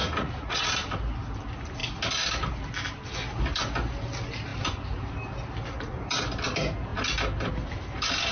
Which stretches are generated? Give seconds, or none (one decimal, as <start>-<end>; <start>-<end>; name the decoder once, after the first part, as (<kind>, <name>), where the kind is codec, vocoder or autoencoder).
0.0-0.7 (vocoder, Vocos)